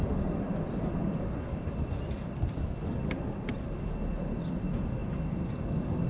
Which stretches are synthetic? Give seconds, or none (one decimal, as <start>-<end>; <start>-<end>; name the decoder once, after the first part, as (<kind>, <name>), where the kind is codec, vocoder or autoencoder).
none